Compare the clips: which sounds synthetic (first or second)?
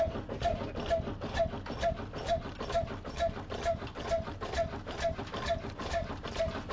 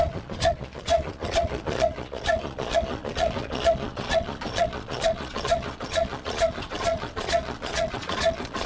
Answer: second